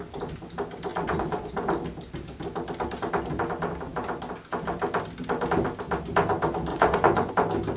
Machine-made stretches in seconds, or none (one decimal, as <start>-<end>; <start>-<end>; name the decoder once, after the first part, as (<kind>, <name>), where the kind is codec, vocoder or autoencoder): 0.9-1.5 (vocoder, Vocos); 6.7-7.3